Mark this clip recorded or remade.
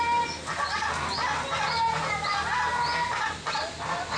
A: recorded